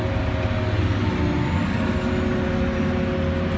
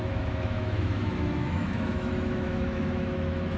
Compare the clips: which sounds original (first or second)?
first